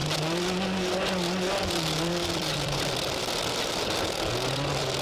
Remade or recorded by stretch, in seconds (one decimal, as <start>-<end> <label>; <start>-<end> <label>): 0.0-2.0 recorded; 2.0-5.0 remade